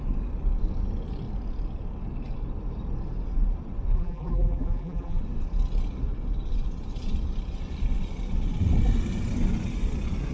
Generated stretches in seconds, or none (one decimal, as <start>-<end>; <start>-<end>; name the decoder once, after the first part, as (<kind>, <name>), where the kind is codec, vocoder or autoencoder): 3.9-5.2 (vocoder, BigVGAN v2)

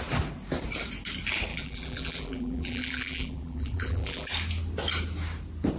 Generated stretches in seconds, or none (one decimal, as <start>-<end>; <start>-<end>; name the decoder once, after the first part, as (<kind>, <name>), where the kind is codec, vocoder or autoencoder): 1.5-4.3 (vocoder, BigVGAN v2)

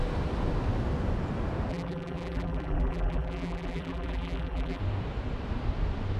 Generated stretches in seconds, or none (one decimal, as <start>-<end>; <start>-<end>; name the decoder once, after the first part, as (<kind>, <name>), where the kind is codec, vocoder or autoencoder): 1.7-4.8 (vocoder, BigVGAN v2)

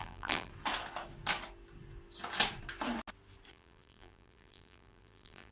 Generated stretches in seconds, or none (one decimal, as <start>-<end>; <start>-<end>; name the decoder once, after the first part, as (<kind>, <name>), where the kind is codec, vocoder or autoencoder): 0.0-0.5 (vocoder, BigVGAN v2); 3.5-5.5